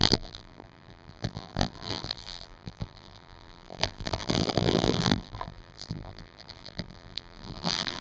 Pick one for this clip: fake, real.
fake